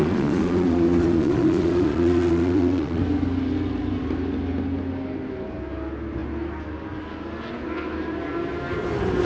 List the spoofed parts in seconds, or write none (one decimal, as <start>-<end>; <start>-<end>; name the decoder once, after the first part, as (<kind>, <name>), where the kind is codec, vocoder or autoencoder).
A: 0.0-3.0 (vocoder, Vocos)